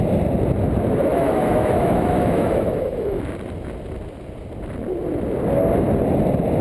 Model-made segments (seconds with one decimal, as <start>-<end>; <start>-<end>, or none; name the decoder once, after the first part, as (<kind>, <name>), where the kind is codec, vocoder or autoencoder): 1.1-3.2 (autoencoder, DAC-VAE)